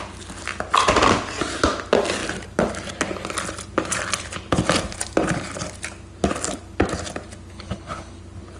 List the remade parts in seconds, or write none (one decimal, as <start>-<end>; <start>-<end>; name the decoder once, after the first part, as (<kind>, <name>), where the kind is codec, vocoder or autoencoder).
7.5-8.2 (codec, HILCodec)